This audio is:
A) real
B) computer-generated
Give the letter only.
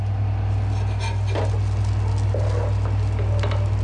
A